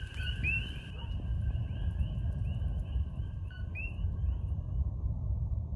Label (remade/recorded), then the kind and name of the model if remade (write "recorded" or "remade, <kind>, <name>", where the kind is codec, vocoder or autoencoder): recorded